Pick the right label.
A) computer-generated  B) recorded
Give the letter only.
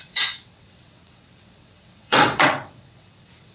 A